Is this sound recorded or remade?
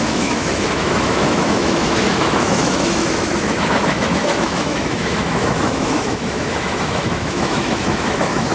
remade